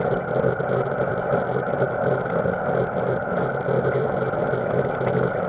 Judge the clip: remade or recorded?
recorded